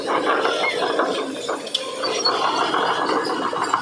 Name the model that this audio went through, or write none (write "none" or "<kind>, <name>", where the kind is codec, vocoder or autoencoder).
none